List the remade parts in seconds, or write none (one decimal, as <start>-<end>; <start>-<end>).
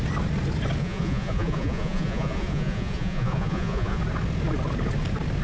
0.8-4.0